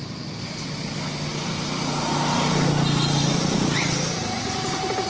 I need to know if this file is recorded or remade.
recorded